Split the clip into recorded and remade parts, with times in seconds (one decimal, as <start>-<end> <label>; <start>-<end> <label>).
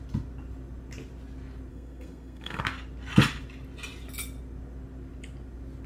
0.0-1.7 recorded; 1.7-2.6 remade; 2.6-5.9 recorded